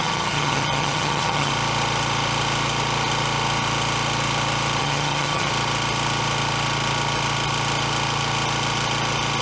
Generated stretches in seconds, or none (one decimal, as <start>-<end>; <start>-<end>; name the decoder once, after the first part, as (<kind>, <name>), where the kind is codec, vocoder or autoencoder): 0.0-1.5 (vocoder, HiFi-GAN); 4.8-5.5